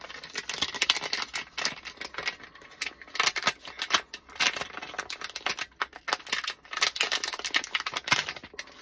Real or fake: real